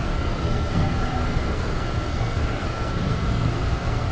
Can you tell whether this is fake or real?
fake